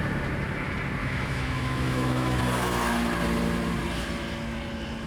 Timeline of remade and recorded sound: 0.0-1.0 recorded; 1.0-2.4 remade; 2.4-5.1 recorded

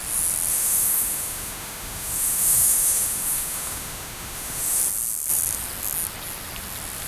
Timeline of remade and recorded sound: 0.0-0.5 recorded; 0.5-4.8 remade; 4.8-7.1 recorded

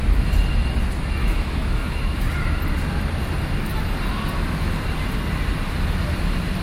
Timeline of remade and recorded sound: 0.0-1.2 recorded; 1.2-2.2 remade; 2.2-6.6 recorded

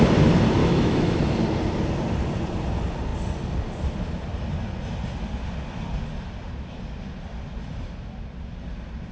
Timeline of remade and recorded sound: 0.0-0.6 recorded; 0.6-1.2 remade; 1.2-9.1 recorded

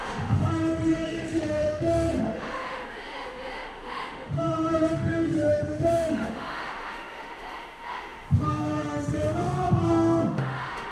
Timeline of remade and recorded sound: 0.0-10.9 remade

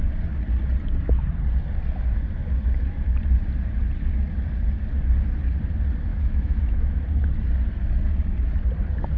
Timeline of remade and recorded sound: 0.0-6.1 recorded; 6.1-7.0 remade; 7.0-9.2 recorded